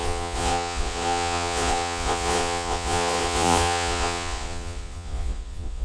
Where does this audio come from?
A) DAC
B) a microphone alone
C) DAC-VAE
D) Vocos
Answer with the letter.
D